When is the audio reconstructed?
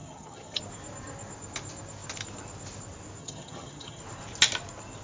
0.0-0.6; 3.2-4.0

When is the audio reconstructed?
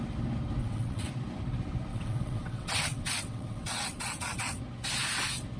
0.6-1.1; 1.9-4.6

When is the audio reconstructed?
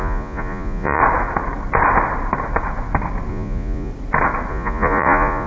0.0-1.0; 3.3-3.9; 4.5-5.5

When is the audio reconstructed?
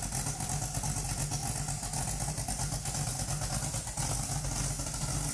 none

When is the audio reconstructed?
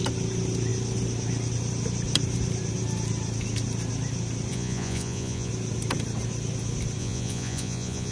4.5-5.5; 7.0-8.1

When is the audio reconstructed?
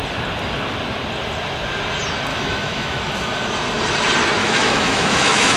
2.3-3.0; 4.4-5.6